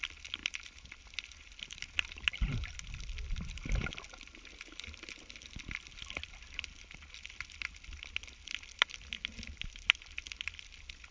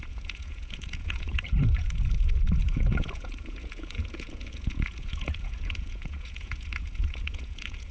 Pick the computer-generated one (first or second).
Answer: second